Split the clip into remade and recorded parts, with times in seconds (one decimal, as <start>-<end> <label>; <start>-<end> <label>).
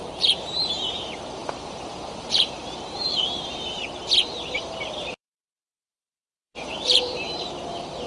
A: 0.0-3.8 remade; 3.8-4.6 recorded; 4.6-8.1 remade